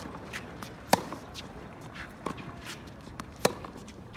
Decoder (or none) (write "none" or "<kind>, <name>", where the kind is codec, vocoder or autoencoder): vocoder, BigVGAN v2